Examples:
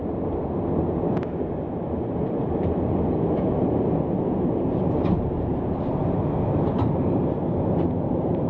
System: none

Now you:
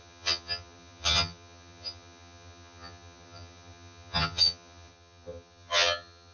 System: vocoder, HiFi-GAN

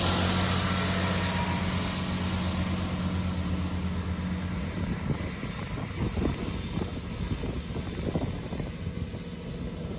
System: none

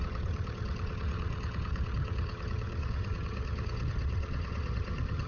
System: vocoder, HiFi-GAN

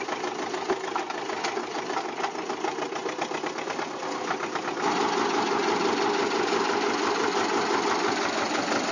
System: none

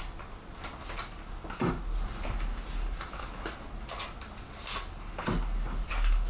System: none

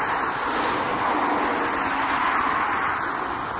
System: none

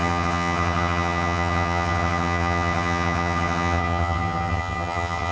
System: vocoder, HiFi-GAN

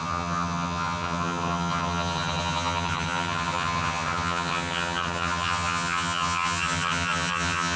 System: vocoder, HiFi-GAN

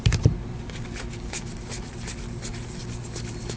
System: none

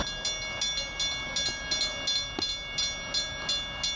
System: none